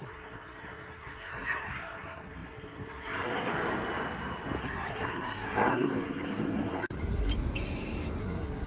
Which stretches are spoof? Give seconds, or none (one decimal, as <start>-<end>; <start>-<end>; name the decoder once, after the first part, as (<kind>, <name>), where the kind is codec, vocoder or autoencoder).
0.0-3.5 (codec, SNAC); 4.6-7.3; 8.2-8.7